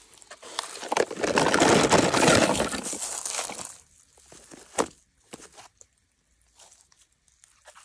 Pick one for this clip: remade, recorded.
recorded